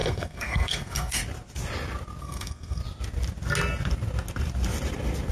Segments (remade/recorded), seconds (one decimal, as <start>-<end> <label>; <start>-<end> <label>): 0.0-1.2 remade; 1.2-2.2 recorded; 2.2-2.8 remade; 2.8-5.3 recorded